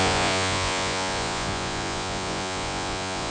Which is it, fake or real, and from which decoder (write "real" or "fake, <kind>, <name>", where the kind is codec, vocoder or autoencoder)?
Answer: fake, vocoder, Vocos